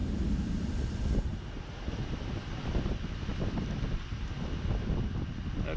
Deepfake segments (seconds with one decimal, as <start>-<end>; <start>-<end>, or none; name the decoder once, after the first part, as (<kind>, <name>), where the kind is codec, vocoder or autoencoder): none